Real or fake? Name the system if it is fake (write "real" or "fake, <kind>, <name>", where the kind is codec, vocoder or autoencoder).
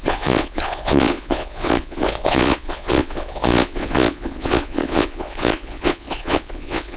fake, vocoder, Vocos